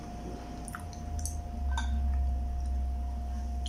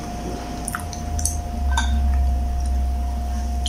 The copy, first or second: second